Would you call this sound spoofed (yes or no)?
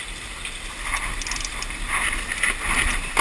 no